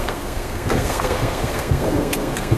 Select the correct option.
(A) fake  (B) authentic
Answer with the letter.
A